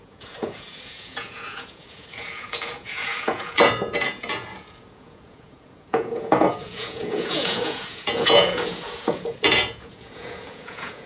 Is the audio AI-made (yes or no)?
yes